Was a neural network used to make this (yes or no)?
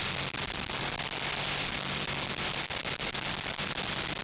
no